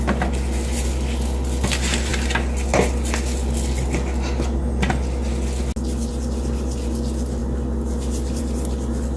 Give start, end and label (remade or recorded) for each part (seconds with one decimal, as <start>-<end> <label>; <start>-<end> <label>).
0.0-9.2 recorded